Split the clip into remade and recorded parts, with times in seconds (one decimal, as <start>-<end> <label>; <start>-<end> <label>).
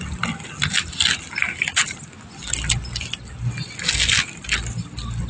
0.0-5.3 recorded